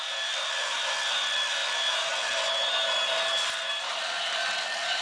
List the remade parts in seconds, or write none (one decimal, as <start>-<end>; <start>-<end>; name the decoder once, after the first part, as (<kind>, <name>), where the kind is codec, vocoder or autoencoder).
none